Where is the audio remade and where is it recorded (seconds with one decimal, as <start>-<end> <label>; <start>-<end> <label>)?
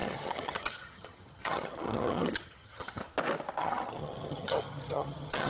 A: 0.0-3.0 remade; 3.0-3.6 recorded; 3.6-5.5 remade